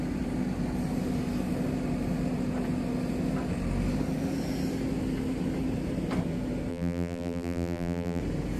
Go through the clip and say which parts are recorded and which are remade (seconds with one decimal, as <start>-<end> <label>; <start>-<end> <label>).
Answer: 0.0-6.7 recorded; 6.7-8.2 remade; 8.2-8.6 recorded